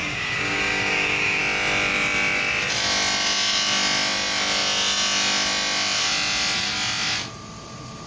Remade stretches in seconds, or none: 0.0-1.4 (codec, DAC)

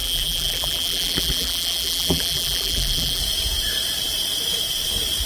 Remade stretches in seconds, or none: 0.0-3.2 (vocoder, BigVGAN v2)

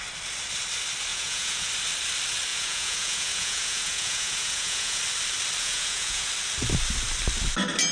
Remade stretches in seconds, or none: 1.1-1.7 (vocoder, Vocos); 2.5-5.0; 5.6-6.3

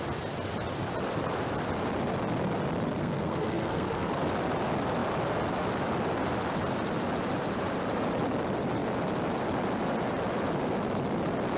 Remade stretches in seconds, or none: 3.0-4.1 (codec, SNAC)

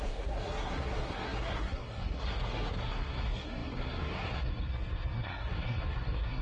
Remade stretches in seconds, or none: 0.0-6.4 (codec, SNAC)

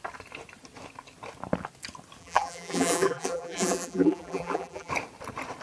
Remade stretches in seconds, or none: 2.2-4.9 (vocoder, BigVGAN v2)

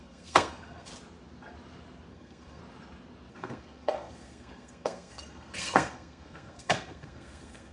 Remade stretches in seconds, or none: 0.0-0.9 (codec, SNAC); 2.1-2.6; 3.3-7.7

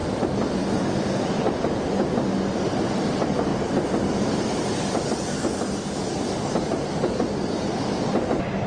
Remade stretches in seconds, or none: none